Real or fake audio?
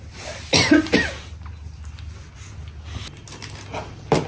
real